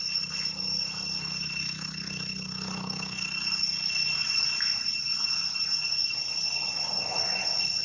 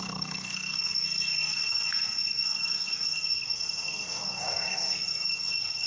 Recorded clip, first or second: first